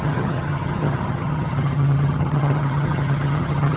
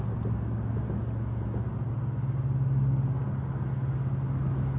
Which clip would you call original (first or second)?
second